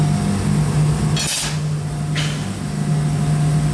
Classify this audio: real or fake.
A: real